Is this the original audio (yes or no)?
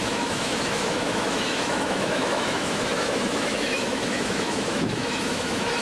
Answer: no